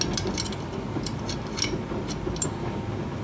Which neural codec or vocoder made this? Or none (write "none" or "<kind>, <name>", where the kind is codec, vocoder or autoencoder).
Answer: none